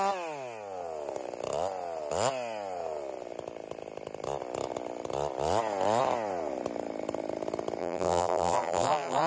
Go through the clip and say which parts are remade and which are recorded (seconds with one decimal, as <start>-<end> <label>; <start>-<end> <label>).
0.0-7.8 recorded; 7.8-9.3 remade